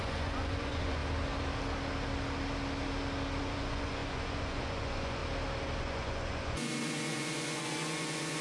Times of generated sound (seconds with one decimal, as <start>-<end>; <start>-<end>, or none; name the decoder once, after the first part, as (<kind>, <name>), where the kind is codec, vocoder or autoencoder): 0.0-1.0 (vocoder, Vocos); 3.4-5.2; 5.8-8.4